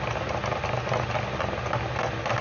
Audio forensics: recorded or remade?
recorded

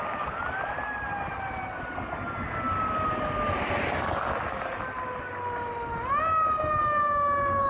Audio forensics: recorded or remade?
recorded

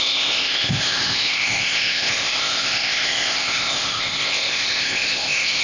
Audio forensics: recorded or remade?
remade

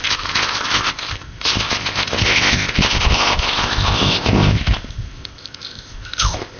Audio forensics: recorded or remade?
remade